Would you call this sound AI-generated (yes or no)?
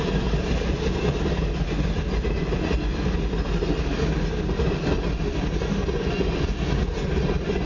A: no